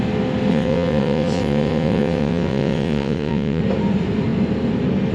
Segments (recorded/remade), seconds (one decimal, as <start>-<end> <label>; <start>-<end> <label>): 0.0-0.5 recorded; 0.5-3.6 remade; 3.6-5.1 recorded